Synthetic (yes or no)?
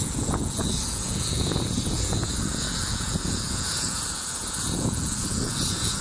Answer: yes